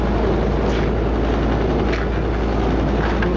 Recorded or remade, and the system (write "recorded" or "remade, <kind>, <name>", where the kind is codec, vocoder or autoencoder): recorded